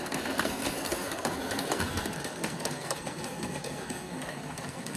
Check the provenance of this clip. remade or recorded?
remade